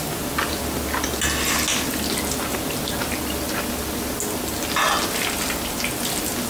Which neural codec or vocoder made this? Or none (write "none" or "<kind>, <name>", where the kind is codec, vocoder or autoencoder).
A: none